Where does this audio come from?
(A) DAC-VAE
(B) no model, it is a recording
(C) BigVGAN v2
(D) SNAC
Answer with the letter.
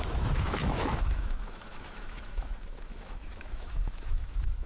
A